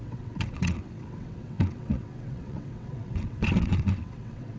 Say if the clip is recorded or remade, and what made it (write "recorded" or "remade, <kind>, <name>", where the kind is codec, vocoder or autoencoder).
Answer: remade, vocoder, WaveNeXt